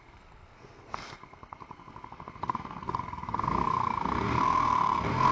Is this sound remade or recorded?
remade